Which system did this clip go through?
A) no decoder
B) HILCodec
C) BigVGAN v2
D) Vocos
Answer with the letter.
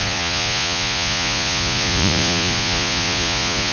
D